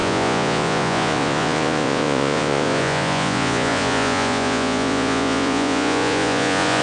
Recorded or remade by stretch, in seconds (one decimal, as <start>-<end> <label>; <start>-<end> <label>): 0.0-6.8 remade